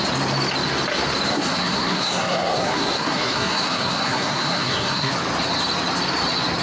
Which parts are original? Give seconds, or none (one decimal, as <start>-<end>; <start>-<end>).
0.0-1.3; 5.1-6.6